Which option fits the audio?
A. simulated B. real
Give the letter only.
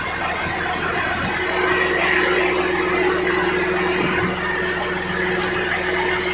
B